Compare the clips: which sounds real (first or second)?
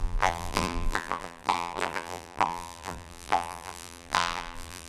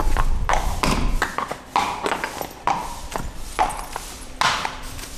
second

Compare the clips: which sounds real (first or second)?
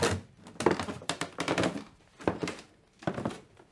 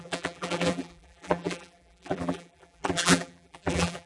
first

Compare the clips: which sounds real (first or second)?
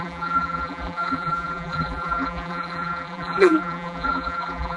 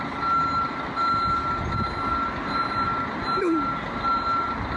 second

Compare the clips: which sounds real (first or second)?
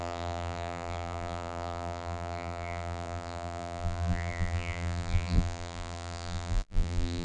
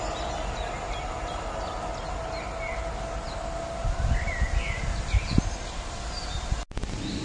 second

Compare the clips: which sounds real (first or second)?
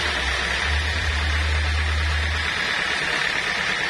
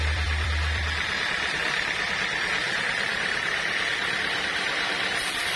first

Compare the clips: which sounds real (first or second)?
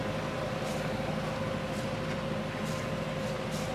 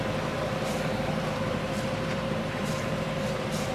first